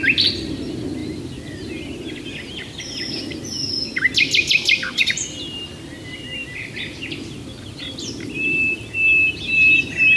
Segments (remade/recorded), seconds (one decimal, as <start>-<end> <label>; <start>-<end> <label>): 0.0-10.2 recorded